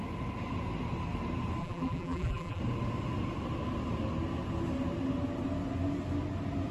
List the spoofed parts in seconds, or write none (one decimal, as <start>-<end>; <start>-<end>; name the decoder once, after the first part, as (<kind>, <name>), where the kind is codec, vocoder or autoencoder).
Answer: 1.6-2.6 (vocoder, BigVGAN v2)